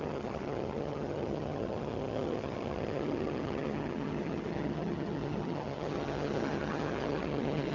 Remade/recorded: remade